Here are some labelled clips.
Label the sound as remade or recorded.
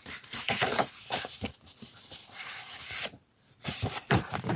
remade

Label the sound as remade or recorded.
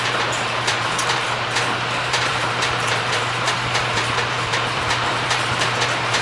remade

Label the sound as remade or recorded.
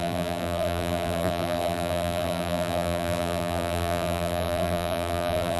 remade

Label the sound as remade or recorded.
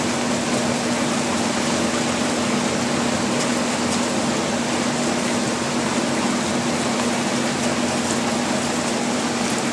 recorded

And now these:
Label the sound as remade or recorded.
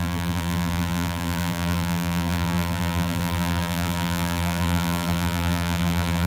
remade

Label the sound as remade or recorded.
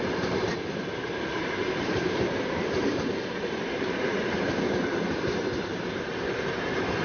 remade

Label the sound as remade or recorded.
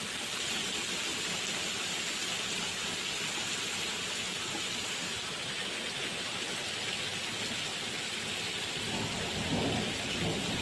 recorded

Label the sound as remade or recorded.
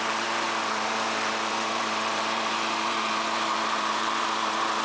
remade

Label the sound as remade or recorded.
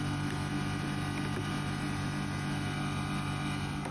recorded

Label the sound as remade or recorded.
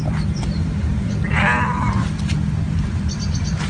remade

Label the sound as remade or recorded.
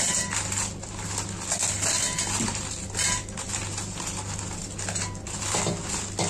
recorded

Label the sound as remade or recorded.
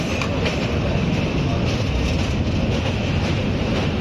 recorded